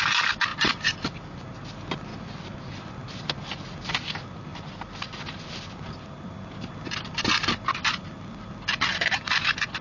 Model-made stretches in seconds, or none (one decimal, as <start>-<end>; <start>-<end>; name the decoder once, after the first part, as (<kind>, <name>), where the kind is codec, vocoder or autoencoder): none